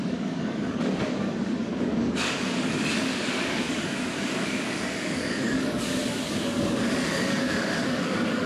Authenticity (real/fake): fake